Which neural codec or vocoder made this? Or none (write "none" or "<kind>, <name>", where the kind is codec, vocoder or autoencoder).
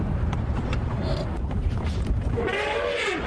vocoder, BigVGAN v2